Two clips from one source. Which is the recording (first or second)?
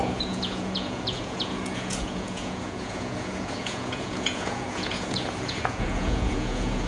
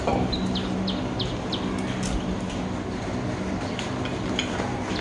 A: second